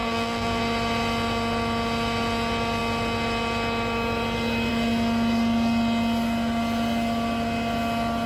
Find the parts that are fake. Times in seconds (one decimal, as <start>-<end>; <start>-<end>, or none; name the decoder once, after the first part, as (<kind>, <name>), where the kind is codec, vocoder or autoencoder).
0.0-0.6 (vocoder, BigVGAN v2)